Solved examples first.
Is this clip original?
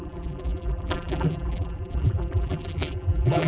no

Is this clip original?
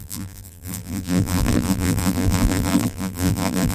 no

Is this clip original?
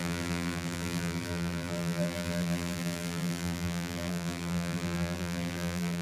no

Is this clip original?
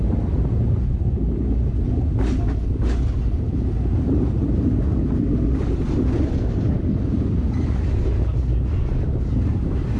yes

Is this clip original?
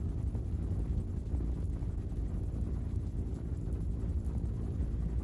yes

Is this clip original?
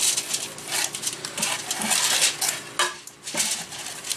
yes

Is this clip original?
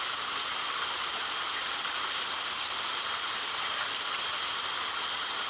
yes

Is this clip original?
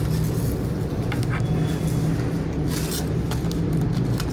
yes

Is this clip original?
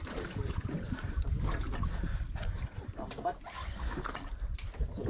yes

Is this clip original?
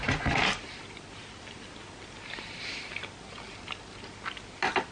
yes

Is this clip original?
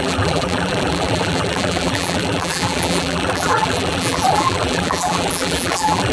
no